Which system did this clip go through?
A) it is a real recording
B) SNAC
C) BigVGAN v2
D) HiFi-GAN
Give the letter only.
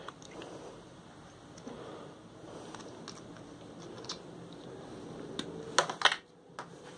A